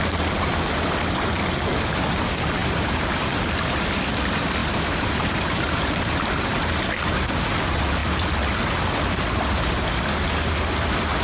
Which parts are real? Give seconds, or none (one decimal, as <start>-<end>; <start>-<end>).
0.0-2.6; 3.1-4.6; 6.0-11.2